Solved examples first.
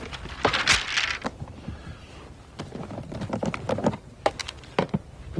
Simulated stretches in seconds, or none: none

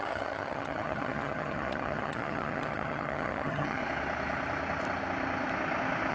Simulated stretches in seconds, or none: 0.0-3.8 (vocoder, HiFi-GAN)